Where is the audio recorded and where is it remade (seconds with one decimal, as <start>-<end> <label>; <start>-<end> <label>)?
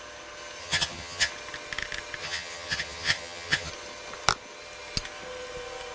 0.0-0.6 recorded; 0.6-1.3 remade; 1.3-2.2 recorded; 2.2-3.7 remade; 3.7-5.9 recorded